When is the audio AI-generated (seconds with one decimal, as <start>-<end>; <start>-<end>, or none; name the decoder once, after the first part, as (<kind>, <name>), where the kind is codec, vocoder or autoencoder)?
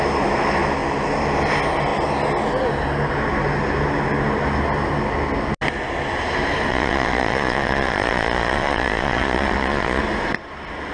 6.7-10.0 (vocoder, Vocos)